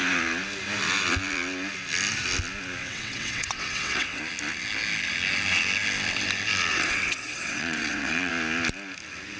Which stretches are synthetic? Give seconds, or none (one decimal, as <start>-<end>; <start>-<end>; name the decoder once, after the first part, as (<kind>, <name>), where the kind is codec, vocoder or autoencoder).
2.8-4.2 (vocoder, WaveNeXt); 6.7-8.3